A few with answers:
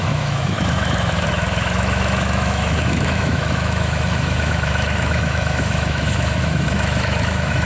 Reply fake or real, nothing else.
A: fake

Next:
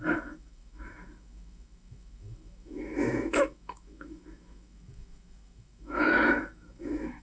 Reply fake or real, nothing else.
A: fake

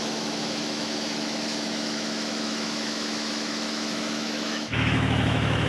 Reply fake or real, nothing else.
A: fake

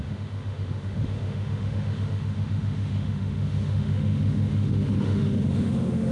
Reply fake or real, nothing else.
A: fake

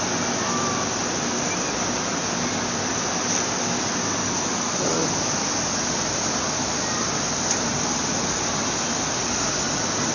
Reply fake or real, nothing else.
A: real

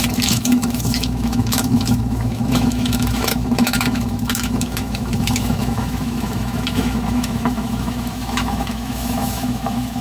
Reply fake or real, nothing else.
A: fake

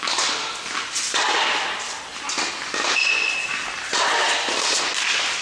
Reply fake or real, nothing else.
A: real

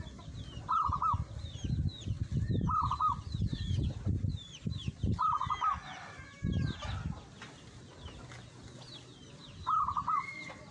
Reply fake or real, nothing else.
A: real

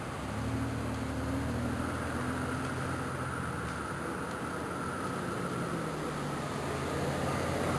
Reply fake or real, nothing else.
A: real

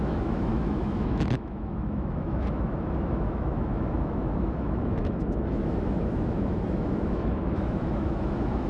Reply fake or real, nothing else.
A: fake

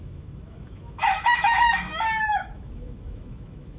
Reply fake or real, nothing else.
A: fake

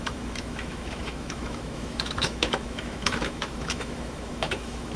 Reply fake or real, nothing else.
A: fake